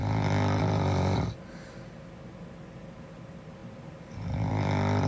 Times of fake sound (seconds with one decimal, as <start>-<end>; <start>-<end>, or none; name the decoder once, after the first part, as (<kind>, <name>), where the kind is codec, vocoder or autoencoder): none